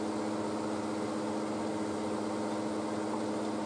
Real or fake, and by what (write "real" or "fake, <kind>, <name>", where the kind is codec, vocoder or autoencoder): real